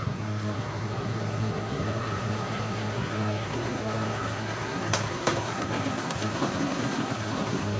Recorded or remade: remade